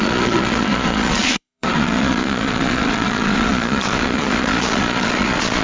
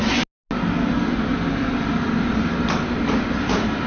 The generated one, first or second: first